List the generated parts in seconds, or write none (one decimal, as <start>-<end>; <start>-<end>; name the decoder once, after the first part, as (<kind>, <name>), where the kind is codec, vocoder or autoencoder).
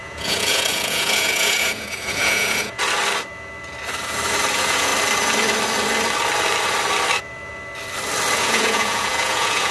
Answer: 0.0-2.8 (vocoder, Vocos); 4.5-4.9; 8.4-9.7